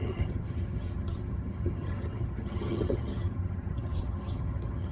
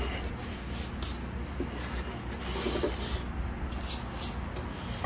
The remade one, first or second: first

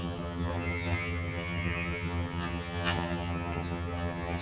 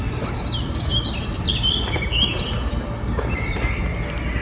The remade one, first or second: first